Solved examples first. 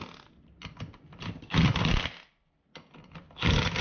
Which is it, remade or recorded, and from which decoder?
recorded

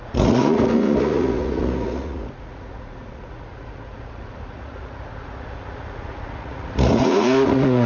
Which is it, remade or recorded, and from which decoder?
remade, vocoder, Vocos